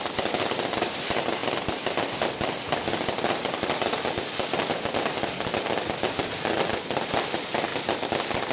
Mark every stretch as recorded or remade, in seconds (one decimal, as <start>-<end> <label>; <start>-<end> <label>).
0.0-8.5 recorded